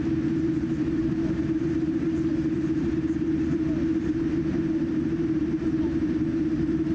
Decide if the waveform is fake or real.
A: fake